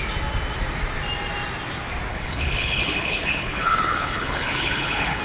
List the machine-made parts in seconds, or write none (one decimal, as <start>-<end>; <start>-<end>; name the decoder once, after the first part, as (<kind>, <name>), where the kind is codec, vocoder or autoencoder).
2.1-5.2 (codec, HILCodec)